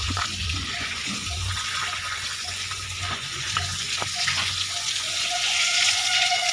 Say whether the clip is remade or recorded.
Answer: remade